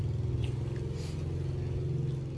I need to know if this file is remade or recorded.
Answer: recorded